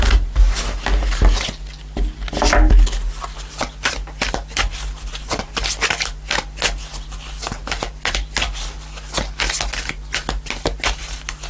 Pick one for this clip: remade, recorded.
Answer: recorded